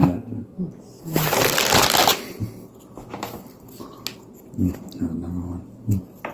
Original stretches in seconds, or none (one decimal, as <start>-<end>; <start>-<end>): 0.6-6.3

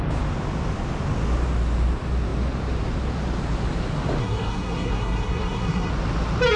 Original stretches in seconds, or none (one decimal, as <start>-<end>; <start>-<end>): 0.0-4.2; 5.9-6.6

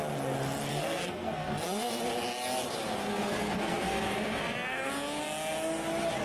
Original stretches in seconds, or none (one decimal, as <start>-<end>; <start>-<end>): 0.0-0.7; 2.0-3.0; 4.9-6.2

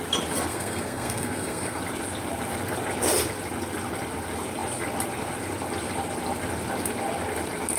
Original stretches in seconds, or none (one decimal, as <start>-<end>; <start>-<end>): 0.0-0.5; 1.8-7.8

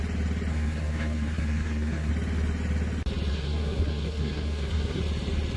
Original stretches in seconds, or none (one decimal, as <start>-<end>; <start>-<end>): 0.0-0.5; 2.1-3.3; 5.0-5.6